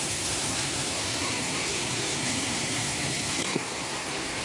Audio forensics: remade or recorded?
remade